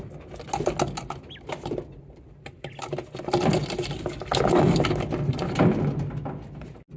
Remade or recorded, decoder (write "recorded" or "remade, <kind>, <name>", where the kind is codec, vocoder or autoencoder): recorded